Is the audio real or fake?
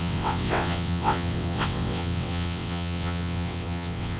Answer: fake